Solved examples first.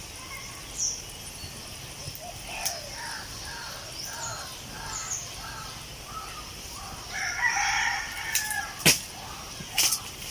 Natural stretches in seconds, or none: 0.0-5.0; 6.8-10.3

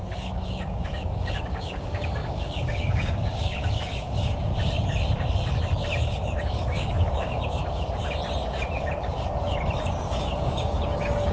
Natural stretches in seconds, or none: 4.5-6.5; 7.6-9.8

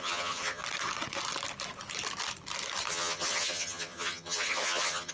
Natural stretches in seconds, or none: 0.6-2.9

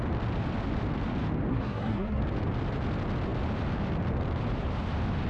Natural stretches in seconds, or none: 0.0-1.5; 2.2-5.3

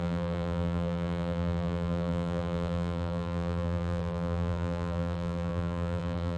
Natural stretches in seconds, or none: none

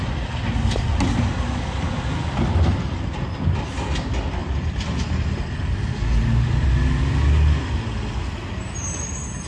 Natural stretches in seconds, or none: 0.0-4.4; 5.3-9.5